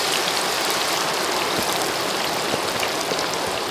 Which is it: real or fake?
real